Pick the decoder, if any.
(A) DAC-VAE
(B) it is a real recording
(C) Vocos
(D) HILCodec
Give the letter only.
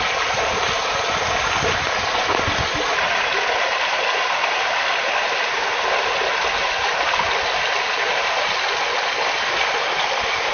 B